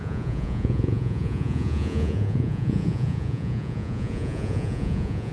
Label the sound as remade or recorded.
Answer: remade